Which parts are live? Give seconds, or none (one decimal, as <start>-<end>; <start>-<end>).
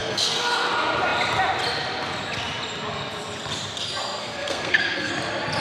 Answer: 0.7-4.2; 5.1-5.6